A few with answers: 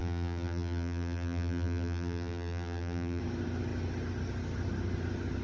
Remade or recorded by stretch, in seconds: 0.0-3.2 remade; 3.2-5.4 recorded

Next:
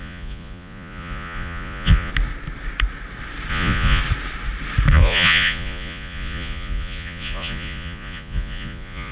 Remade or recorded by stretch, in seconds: 0.0-2.1 remade; 2.1-3.5 recorded; 3.5-4.0 remade; 4.0-4.9 recorded; 4.9-9.1 remade

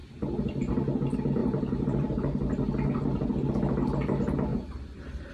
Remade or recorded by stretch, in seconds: 0.0-1.4 recorded; 1.4-2.5 remade; 2.5-4.5 recorded; 4.5-5.3 remade